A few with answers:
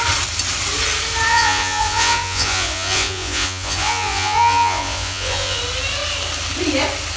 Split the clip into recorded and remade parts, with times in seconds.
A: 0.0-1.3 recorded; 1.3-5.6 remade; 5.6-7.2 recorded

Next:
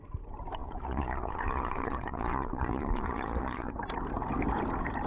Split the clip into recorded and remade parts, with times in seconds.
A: 0.0-0.6 recorded; 0.6-3.7 remade; 3.7-5.1 recorded